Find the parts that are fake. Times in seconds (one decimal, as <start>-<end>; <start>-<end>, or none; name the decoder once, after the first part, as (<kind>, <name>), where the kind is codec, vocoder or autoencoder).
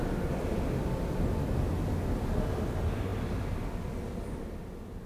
none